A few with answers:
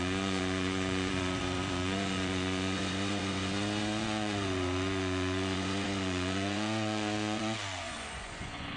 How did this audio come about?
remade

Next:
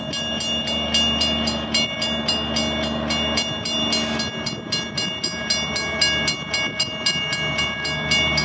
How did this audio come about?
recorded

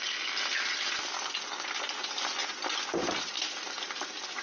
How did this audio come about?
recorded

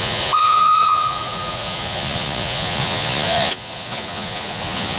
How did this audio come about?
remade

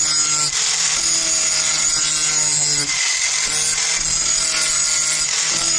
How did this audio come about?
recorded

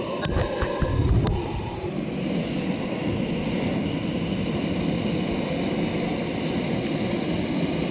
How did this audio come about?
recorded